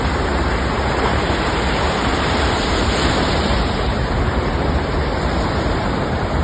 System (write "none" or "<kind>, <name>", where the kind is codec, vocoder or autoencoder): vocoder, BigVGAN v2